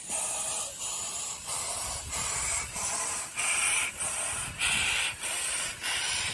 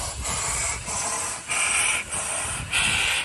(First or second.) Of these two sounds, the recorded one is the second